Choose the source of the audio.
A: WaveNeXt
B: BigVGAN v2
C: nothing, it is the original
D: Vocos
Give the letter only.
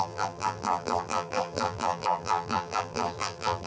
B